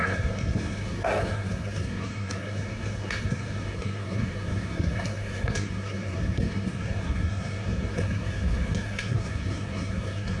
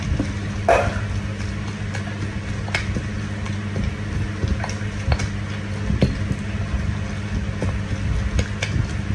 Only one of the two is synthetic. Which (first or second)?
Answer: first